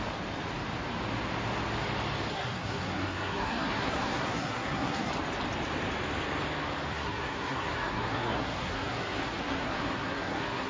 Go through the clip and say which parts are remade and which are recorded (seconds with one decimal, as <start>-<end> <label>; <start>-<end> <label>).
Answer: 0.0-2.3 recorded; 2.3-5.1 remade; 5.1-6.9 recorded; 6.9-10.7 remade